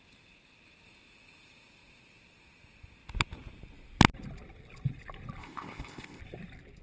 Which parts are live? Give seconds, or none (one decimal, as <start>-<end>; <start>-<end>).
0.0-5.4; 6.2-6.8